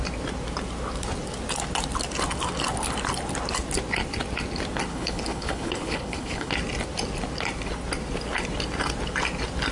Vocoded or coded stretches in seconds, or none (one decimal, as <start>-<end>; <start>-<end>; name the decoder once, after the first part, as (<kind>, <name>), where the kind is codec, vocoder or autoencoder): 4.9-6.5 (codec, HILCodec)